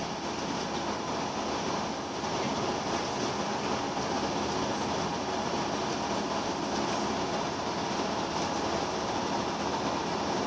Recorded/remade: recorded